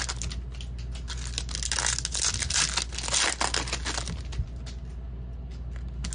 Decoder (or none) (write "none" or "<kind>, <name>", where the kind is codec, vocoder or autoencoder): none